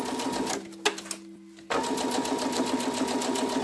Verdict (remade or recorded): recorded